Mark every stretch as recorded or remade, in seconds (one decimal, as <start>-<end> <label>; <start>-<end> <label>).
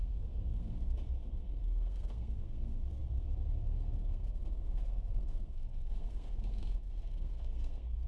0.0-8.1 remade